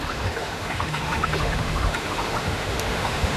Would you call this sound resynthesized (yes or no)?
yes